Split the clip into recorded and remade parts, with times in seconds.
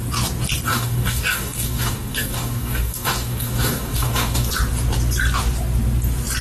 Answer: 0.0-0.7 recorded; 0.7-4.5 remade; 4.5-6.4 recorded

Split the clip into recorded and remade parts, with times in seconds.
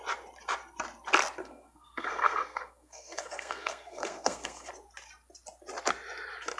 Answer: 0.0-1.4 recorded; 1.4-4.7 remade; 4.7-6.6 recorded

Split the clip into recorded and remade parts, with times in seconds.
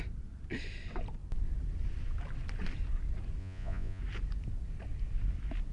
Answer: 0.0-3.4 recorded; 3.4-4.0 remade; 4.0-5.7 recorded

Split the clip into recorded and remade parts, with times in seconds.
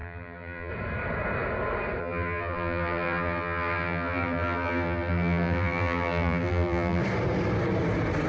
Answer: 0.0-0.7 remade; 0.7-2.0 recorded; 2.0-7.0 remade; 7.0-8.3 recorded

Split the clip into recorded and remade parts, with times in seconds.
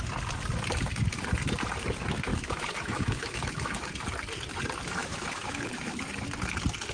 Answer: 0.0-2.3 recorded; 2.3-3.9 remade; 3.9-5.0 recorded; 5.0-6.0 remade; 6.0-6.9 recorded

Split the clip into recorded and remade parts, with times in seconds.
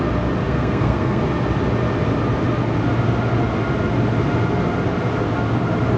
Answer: 0.0-0.4 recorded; 0.4-1.2 remade; 1.2-6.0 recorded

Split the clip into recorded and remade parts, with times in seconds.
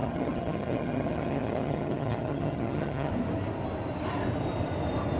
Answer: 0.0-3.1 remade; 3.1-5.2 recorded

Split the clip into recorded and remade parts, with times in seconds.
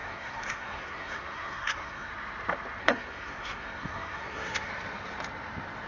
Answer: 0.0-2.1 remade; 2.1-2.8 recorded; 2.8-4.7 remade; 4.7-5.9 recorded